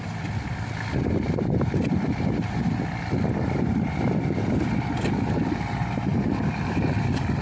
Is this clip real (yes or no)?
no